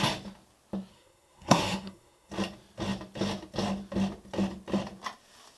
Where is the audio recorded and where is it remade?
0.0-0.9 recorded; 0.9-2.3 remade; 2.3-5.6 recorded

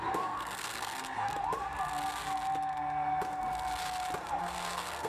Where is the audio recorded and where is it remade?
0.0-1.3 remade; 1.3-4.4 recorded; 4.4-5.1 remade

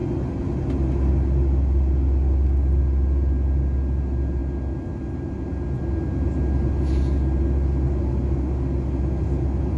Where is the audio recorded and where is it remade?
0.0-9.8 recorded

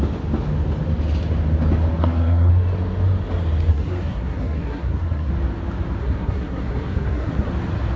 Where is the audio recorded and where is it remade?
0.0-2.0 recorded; 2.0-2.5 remade; 2.5-3.7 recorded; 3.7-5.3 remade; 5.3-6.0 recorded; 6.0-7.5 remade; 7.5-8.0 recorded

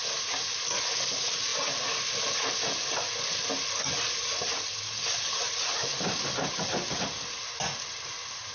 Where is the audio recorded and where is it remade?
0.0-8.5 recorded